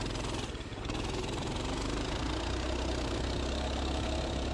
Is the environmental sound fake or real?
fake